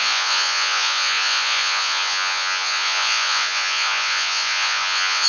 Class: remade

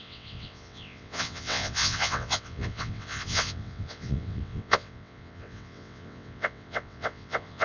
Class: remade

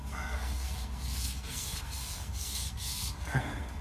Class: remade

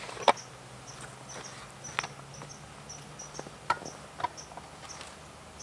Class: recorded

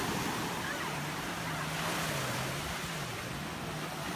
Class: recorded